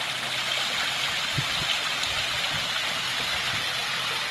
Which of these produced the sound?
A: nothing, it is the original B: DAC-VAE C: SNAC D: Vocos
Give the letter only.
A